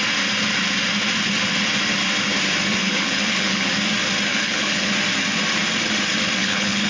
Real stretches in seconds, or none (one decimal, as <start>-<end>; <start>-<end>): 0.0-2.8; 3.7-4.3; 4.9-6.4